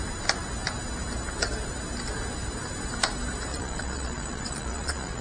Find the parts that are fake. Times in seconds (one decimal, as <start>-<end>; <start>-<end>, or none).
3.5-5.2